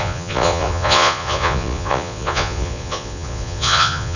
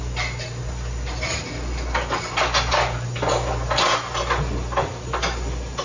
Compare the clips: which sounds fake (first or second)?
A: first